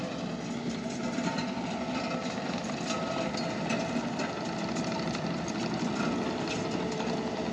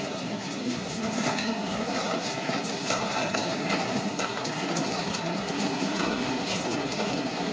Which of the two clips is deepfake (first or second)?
second